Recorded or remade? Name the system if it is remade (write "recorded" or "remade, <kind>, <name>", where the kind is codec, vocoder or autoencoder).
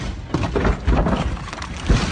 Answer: recorded